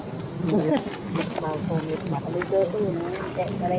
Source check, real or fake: real